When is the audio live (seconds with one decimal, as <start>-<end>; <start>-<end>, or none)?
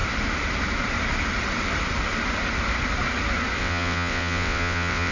0.0-3.6